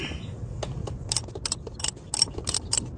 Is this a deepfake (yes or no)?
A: no